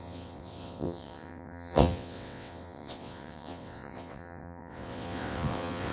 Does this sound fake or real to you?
fake